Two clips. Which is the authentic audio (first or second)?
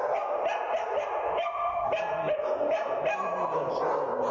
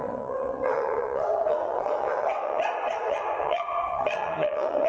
first